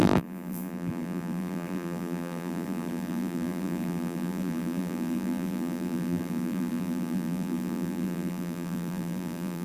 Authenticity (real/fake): fake